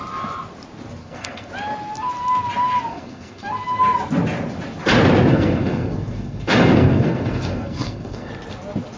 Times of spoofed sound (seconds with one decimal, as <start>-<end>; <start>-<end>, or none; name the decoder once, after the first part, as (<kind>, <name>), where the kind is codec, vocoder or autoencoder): 1.0-1.5 (codec, SNAC); 2.9-3.5; 5.3-8.3